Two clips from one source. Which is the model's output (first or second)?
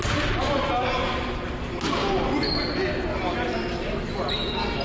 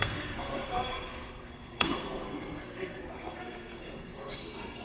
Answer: second